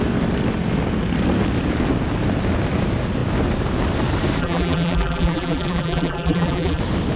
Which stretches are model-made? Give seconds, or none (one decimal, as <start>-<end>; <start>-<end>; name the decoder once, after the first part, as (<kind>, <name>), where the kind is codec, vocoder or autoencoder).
4.4-6.8 (vocoder, BigVGAN v2)